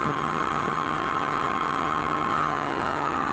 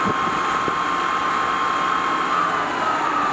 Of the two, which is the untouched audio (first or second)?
second